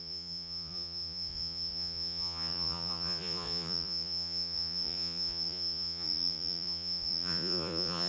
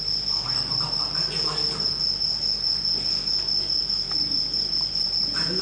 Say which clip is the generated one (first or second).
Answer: first